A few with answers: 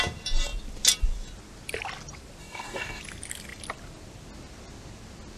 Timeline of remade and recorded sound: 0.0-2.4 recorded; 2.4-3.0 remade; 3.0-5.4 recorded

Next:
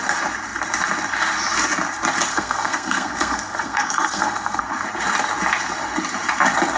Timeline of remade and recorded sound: 0.0-2.3 recorded; 2.3-4.6 remade; 4.6-6.8 recorded

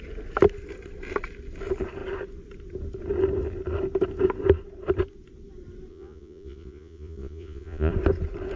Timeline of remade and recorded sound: 0.0-5.9 recorded; 5.9-7.9 remade; 7.9-8.6 recorded